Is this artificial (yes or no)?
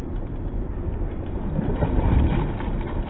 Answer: no